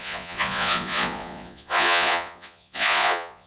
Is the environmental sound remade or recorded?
remade